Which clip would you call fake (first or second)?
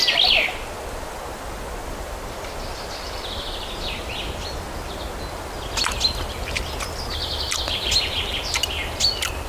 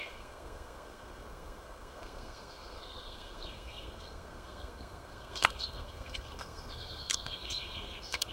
second